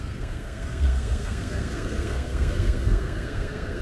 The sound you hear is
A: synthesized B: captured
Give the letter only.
A